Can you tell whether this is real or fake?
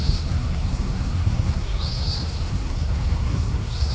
fake